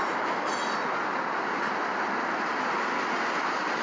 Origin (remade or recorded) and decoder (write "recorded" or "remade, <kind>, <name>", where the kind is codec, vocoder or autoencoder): recorded